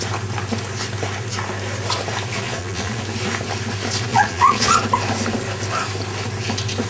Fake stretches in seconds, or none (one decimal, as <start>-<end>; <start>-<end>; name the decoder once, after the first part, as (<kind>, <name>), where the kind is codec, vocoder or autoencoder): 2.3-3.0 (vocoder, Vocos); 4.1-4.8